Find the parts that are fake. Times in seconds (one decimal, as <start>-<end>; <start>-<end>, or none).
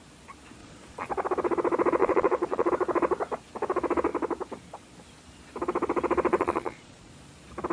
0.6-1.1; 2.0-2.7; 6.3-7.1